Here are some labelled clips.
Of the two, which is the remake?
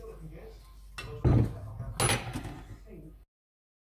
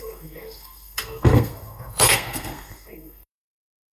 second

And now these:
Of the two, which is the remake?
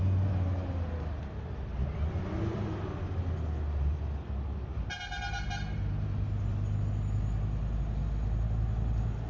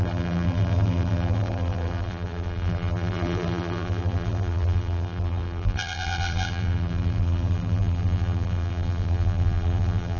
second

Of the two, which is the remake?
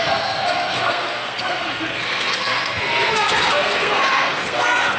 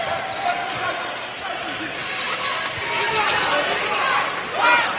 first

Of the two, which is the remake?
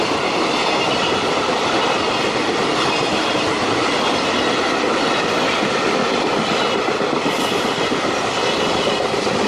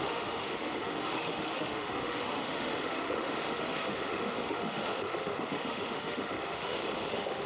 second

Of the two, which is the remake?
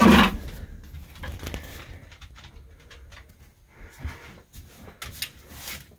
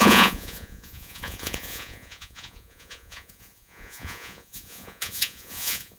second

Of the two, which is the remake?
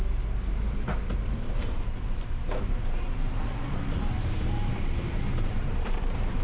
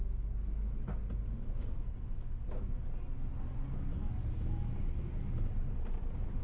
first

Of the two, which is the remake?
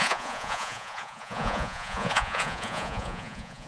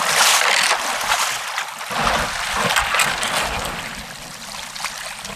first